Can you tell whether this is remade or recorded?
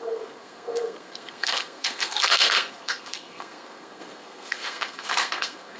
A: remade